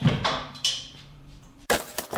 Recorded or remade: remade